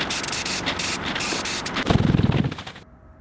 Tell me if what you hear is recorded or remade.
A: recorded